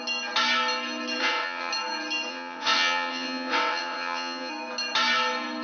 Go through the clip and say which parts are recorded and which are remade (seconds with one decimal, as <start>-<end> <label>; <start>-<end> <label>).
0.0-1.2 recorded; 1.2-1.7 remade; 1.7-2.3 recorded; 2.3-4.5 remade; 4.5-5.6 recorded